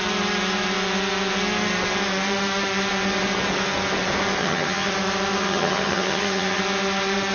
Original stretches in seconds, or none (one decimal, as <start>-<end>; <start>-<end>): 0.0-4.4; 4.9-5.4; 6.6-7.3